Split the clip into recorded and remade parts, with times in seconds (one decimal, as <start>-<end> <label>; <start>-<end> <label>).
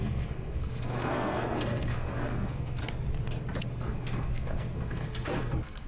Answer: 0.0-2.8 remade; 2.8-3.6 recorded; 3.6-5.9 remade